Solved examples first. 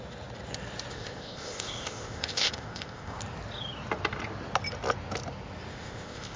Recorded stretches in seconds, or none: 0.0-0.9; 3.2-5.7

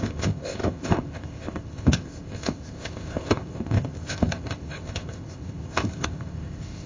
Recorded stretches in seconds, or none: none

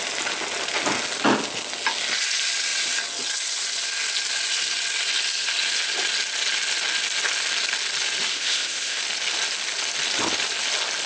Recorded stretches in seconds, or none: 0.0-8.3; 9.0-11.1

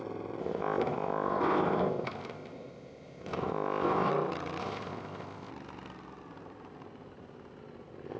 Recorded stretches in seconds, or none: 0.0-0.4; 4.1-4.6; 5.5-8.2

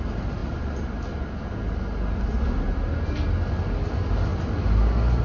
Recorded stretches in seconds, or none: 0.0-5.2

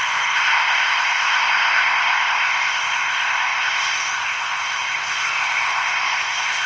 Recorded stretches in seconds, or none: none

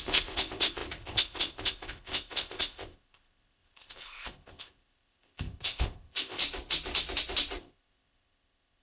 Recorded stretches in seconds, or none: 6.4-7.6